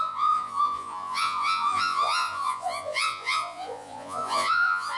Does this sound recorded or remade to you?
remade